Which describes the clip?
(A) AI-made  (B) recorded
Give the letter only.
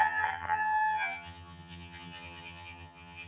A